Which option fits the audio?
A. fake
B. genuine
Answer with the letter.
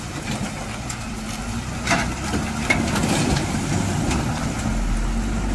B